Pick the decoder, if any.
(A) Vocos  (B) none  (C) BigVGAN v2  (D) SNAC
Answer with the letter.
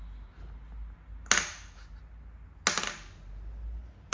B